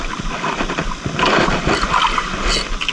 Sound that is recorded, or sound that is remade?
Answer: recorded